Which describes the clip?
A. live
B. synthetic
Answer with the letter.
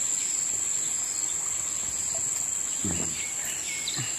A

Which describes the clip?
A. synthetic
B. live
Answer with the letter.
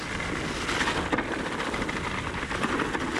B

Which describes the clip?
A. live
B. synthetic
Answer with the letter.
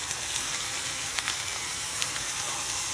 B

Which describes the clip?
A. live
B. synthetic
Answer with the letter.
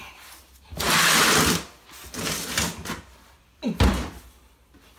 A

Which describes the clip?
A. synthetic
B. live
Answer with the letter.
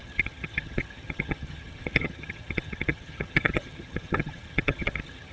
A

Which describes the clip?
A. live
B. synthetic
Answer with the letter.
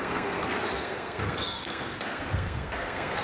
B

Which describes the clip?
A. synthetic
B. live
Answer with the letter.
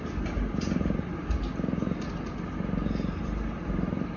B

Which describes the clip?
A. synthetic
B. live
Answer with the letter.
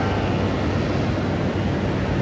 B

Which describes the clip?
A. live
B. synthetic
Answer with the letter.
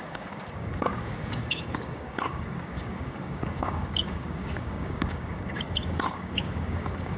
B